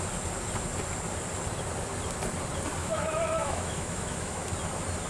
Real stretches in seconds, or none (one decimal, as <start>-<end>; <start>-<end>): 0.0-2.8; 4.5-5.1